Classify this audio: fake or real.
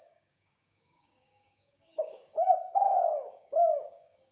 fake